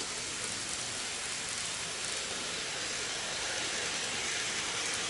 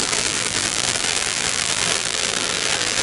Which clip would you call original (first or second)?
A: first